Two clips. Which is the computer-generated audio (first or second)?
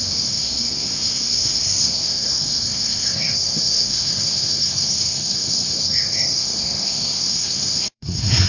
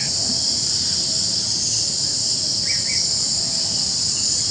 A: first